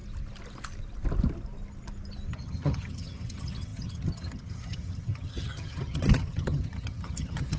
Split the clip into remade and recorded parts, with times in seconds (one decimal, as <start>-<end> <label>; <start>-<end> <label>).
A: 0.0-2.3 recorded; 2.3-7.6 remade